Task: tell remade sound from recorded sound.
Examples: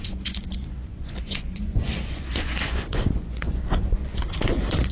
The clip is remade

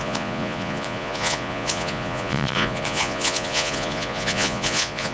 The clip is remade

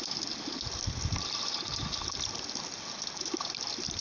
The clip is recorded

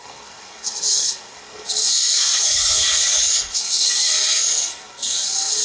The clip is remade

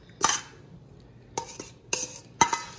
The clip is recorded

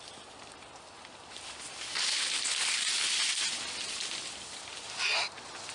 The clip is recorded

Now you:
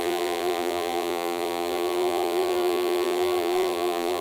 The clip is remade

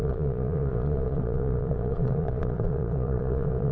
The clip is remade